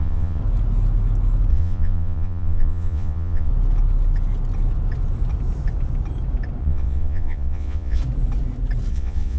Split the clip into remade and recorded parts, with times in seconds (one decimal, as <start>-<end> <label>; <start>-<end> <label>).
0.0-0.4 remade; 0.4-1.5 recorded; 1.5-3.5 remade; 3.5-6.6 recorded; 6.6-8.0 remade; 8.0-8.9 recorded; 8.9-9.4 remade